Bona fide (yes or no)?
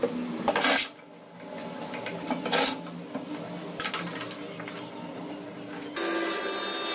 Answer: yes